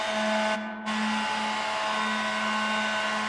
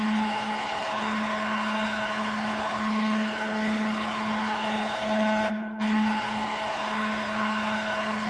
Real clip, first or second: first